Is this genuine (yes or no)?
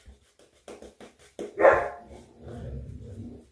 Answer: no